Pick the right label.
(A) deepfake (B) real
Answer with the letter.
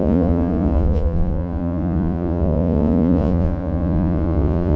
A